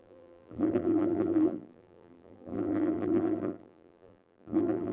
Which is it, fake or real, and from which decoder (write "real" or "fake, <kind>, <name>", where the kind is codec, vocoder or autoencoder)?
fake, vocoder, BigVGAN v2